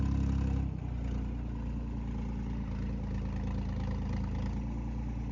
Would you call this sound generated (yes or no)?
no